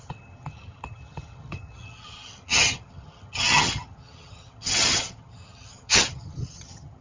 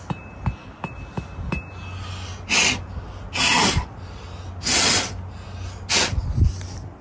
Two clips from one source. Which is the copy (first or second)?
first